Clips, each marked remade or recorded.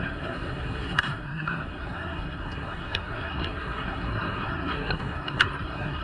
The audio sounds remade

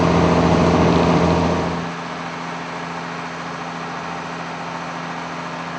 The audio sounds recorded